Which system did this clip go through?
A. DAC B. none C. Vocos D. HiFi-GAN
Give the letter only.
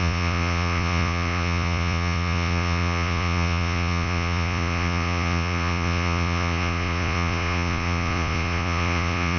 C